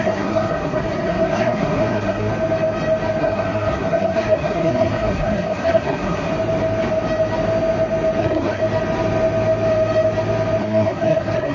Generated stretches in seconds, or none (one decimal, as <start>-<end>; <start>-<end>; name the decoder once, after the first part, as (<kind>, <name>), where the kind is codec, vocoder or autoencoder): 0.0-2.3 (codec, SNAC); 3.2-6.3; 8.2-8.6; 10.6-11.5